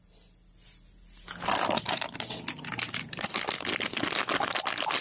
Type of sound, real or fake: real